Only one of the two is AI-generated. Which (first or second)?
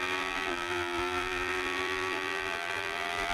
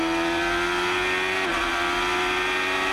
first